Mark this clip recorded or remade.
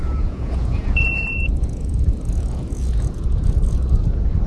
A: remade